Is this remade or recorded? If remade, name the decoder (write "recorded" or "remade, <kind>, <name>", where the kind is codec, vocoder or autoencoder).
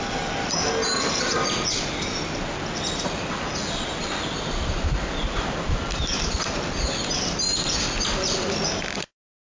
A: recorded